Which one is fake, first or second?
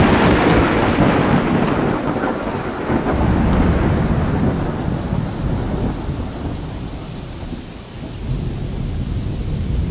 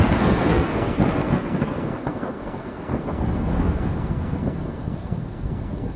second